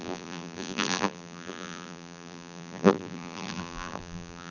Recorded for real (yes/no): no